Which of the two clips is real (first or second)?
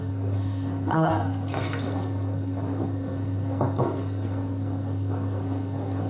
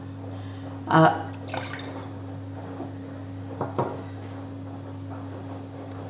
second